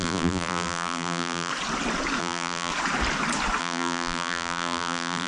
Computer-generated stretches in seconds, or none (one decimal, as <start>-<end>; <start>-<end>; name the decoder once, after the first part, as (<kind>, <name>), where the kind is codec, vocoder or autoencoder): 0.0-1.5 (vocoder, BigVGAN v2); 2.2-2.7; 3.6-5.3